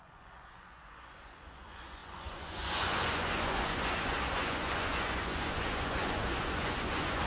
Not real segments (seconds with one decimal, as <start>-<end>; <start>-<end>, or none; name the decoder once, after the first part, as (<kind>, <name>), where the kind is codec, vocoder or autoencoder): 0.0-7.3 (vocoder, Vocos)

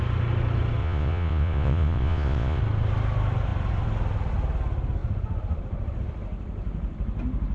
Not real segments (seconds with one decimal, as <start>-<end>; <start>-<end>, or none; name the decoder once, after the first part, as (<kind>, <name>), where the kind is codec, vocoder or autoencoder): 0.8-2.6 (vocoder, Vocos)